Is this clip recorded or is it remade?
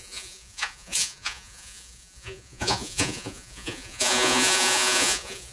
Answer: remade